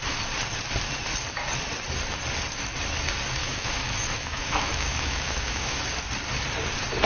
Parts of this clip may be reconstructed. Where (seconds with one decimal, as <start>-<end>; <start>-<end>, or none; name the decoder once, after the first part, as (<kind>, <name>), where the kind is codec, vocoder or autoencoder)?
3.4-5.8 (autoencoder, DAC-VAE)